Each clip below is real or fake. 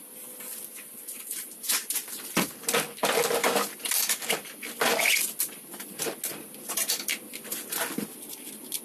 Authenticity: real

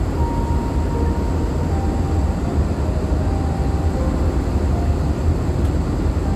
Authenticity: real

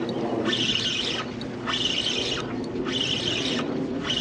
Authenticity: real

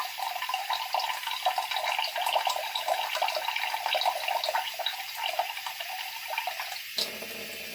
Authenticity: real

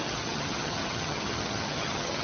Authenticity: fake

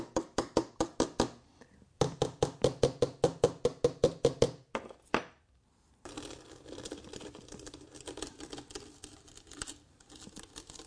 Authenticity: real